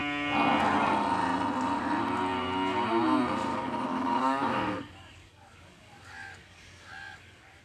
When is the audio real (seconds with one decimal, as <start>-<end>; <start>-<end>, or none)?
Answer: 0.0-3.5